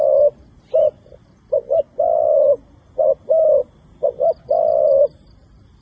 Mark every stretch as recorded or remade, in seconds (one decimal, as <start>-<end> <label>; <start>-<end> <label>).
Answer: 0.0-5.8 recorded